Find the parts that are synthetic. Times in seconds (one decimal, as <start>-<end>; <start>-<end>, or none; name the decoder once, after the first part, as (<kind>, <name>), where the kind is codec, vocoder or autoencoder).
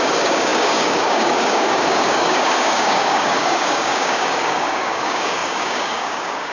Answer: 0.0-6.5 (codec, DAC)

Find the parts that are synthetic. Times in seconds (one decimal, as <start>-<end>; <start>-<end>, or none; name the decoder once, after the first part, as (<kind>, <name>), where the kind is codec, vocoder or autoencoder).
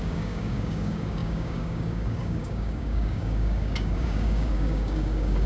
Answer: 0.0-5.5 (codec, DAC)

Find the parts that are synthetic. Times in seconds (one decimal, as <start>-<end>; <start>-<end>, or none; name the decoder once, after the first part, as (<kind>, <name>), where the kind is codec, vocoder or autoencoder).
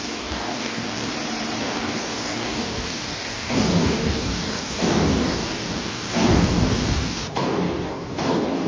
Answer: 0.0-1.1 (codec, DAC); 1.6-8.7